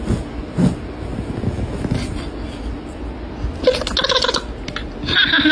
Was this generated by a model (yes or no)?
no